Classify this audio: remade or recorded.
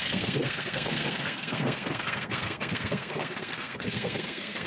remade